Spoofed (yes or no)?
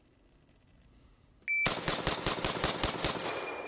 no